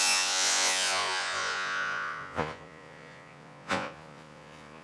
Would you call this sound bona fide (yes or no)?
no